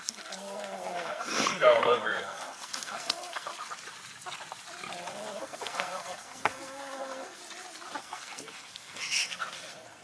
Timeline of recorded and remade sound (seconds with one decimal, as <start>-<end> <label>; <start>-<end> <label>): 0.0-3.5 remade; 3.5-5.1 recorded; 5.1-7.4 remade; 7.4-8.0 recorded; 8.0-10.0 remade